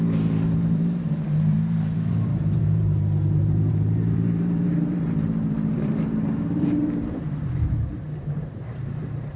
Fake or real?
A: fake